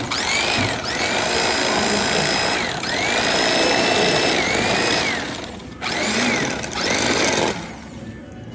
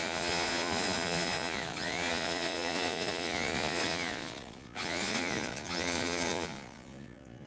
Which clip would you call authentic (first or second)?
first